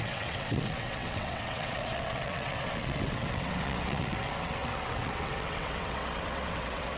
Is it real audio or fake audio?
fake